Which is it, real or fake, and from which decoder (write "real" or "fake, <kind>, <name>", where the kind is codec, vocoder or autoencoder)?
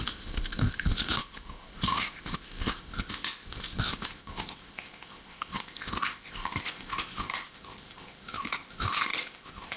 fake, codec, ZipCodec